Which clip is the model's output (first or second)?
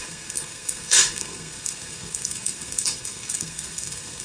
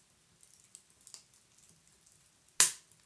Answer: first